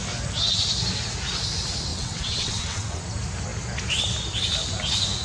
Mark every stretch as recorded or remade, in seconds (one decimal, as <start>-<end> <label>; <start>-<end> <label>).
0.0-1.9 recorded; 1.9-3.0 remade; 3.0-5.2 recorded